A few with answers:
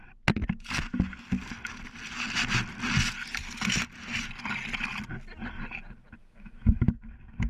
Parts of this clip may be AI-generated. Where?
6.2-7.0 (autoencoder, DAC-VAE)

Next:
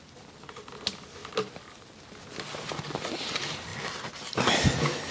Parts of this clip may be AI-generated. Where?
none

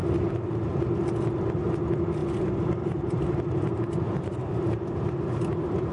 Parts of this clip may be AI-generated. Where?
2.2-5.9 (vocoder, BigVGAN v2)

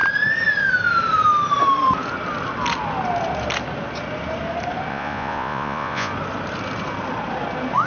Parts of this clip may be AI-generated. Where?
4.9-6.1 (vocoder, Vocos)

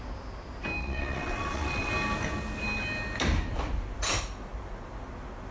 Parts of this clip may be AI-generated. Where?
0.8-1.9 (vocoder, WaveNeXt)

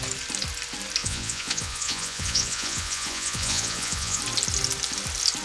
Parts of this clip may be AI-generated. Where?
1.0-4.2 (vocoder, Vocos)